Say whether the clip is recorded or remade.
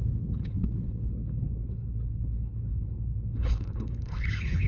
remade